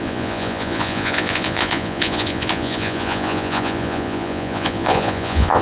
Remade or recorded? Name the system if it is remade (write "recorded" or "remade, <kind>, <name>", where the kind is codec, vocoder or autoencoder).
remade, vocoder, Vocos